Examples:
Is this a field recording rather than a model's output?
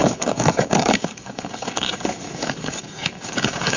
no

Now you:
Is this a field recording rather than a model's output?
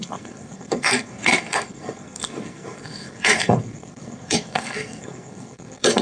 no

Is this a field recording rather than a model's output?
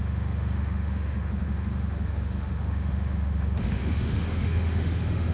no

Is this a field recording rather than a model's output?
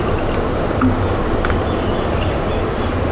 yes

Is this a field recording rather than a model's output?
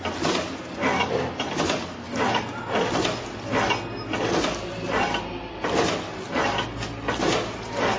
yes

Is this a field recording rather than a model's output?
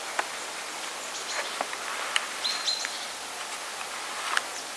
yes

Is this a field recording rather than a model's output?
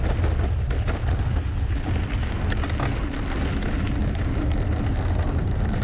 yes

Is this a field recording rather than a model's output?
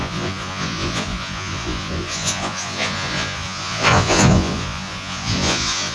no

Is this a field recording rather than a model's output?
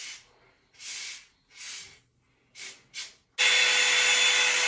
yes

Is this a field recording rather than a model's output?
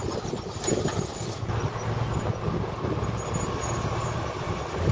yes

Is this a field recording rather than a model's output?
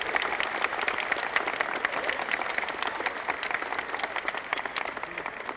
yes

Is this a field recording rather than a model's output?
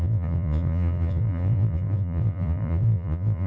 no